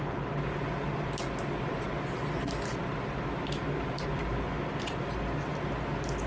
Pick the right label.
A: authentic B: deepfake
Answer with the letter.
A